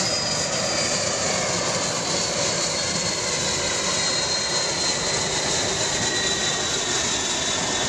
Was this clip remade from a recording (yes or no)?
no